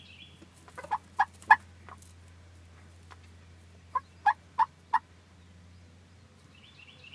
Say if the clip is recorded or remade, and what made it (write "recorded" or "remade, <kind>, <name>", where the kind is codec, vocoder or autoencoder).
recorded